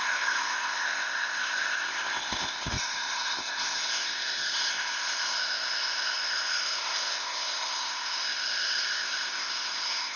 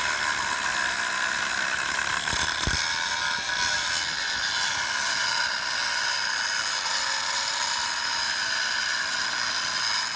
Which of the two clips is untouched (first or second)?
second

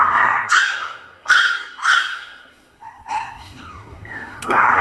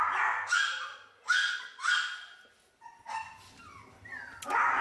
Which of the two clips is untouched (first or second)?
second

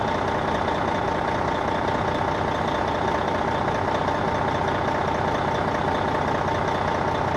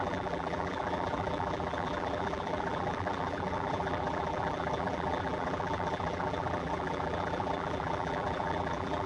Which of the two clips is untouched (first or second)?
first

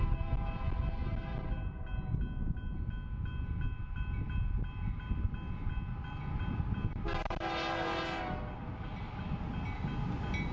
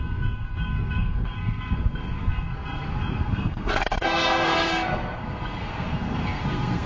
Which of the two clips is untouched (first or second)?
first